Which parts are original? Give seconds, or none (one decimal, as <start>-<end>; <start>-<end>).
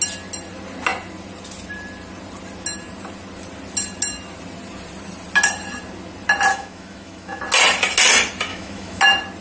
0.0-6.5; 7.4-8.5; 9.0-9.4